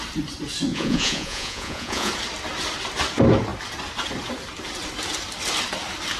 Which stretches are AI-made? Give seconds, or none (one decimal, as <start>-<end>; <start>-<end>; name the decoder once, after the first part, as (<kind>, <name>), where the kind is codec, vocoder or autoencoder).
0.7-2.1 (vocoder, Vocos)

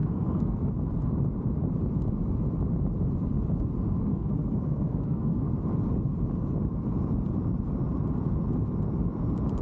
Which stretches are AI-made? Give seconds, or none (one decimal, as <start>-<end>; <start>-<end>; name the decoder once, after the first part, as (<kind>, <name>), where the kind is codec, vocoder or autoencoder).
0.0-0.7 (codec, SNAC); 4.1-5.5

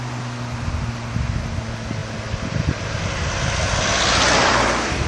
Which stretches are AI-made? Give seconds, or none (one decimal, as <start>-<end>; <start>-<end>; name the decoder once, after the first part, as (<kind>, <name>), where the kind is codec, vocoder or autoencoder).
none

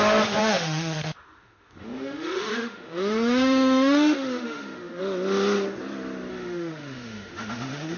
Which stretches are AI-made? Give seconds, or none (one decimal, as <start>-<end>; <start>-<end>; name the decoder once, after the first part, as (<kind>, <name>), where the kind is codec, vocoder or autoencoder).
0.4-5.0 (autoencoder, DAC-VAE); 6.3-8.0

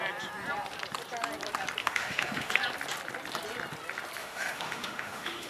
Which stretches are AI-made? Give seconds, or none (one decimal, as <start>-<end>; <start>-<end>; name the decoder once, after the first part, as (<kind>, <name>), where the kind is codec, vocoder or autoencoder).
1.8-2.5 (autoencoder, DAC-VAE); 4.2-5.5